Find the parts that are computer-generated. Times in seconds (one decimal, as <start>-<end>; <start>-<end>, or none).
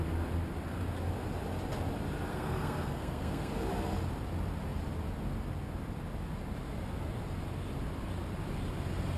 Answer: 2.3-3.5